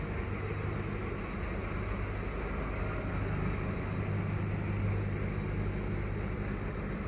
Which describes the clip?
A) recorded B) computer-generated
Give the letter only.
A